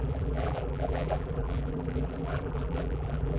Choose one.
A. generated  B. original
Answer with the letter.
A